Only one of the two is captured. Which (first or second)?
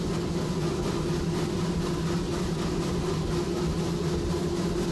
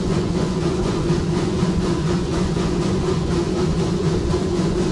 first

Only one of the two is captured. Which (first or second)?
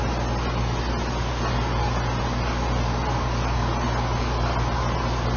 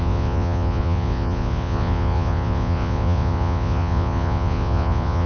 first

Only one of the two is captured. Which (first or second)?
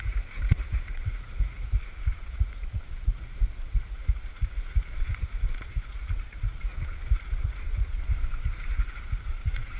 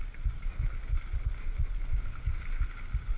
second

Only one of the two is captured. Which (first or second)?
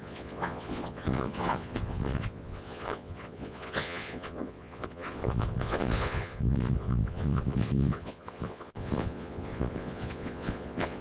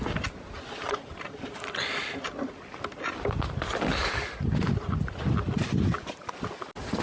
second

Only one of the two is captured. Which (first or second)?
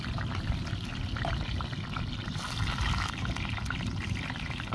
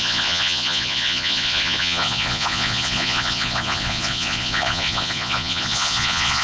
first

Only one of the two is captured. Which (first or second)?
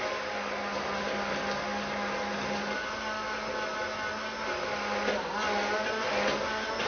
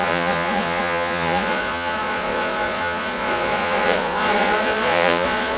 first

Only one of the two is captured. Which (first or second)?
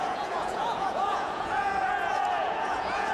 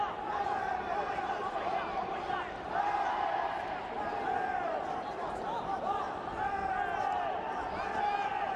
second